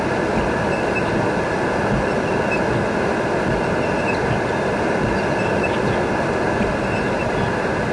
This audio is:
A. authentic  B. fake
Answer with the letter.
A